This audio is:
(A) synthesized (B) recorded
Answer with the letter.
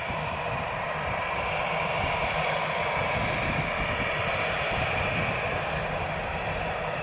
B